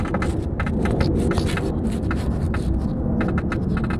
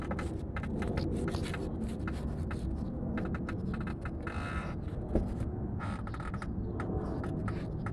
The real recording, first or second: second